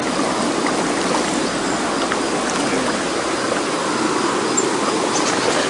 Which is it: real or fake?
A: real